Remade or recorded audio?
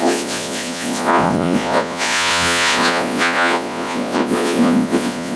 remade